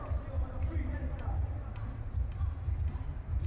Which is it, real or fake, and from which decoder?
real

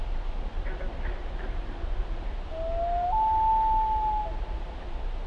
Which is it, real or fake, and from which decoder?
real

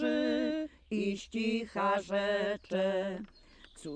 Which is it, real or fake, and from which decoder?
real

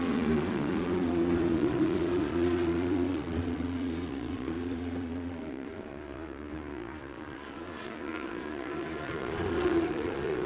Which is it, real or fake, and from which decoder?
fake, vocoder, Vocos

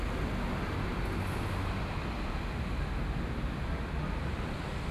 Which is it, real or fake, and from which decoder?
real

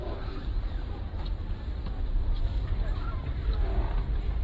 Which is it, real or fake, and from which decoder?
fake, vocoder, BigVGAN v2